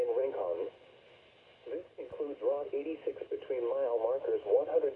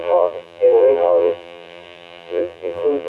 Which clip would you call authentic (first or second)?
first